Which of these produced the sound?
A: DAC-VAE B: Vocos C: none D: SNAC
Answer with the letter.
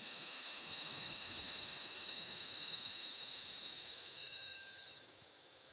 A